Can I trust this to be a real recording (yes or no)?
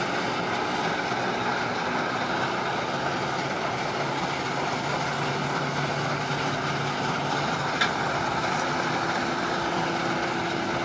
yes